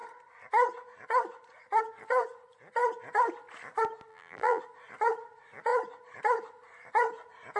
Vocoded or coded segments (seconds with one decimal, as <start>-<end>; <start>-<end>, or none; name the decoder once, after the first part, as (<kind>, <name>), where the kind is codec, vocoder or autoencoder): 4.1-4.6 (vocoder, BigVGAN v2)